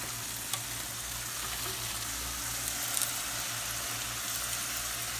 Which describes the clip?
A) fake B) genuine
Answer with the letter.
B